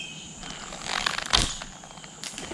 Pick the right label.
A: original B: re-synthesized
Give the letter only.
A